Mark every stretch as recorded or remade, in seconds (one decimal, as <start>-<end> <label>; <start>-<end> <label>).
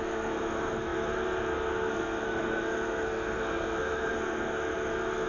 0.0-5.3 remade